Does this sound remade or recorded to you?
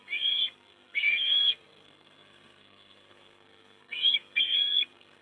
remade